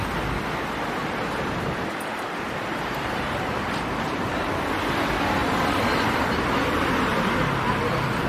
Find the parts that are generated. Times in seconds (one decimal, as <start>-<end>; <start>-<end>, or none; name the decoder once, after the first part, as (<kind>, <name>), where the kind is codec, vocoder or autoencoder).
1.0-4.6 (vocoder, BigVGAN v2); 7.1-8.3